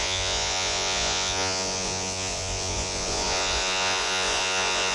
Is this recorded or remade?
remade